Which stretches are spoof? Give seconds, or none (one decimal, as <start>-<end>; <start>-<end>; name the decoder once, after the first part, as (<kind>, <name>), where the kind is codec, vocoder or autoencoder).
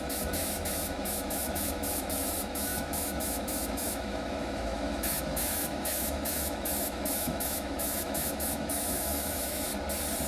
0.0-9.7 (autoencoder, DAC-VAE)